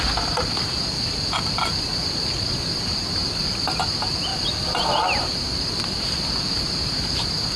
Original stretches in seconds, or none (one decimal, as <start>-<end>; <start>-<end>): 3.2-3.8